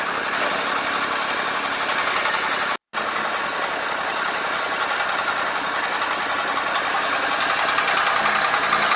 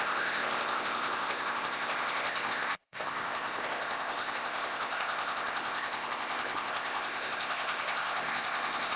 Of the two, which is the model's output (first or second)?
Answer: second